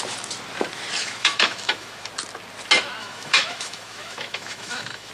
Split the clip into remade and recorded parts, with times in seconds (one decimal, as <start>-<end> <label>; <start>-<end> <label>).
0.0-1.0 recorded; 1.0-2.1 remade; 2.1-3.0 recorded; 3.0-5.1 remade